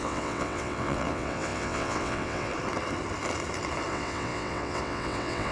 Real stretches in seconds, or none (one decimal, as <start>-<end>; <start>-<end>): 2.5-3.9